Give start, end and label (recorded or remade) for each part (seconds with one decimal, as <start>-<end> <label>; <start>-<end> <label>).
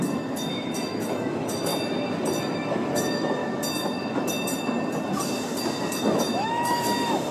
0.0-1.7 remade; 1.7-2.4 recorded; 2.4-3.4 remade; 3.4-6.0 recorded; 6.0-7.3 remade